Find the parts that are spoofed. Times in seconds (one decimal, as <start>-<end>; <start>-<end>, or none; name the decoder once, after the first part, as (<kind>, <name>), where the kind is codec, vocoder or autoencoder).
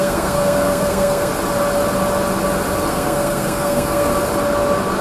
0.0-1.3 (codec, SNAC); 2.9-4.1